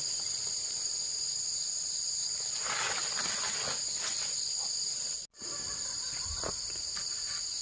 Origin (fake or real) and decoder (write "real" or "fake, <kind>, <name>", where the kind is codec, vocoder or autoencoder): real